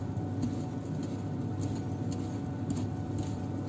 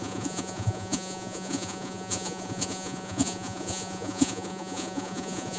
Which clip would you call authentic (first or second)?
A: first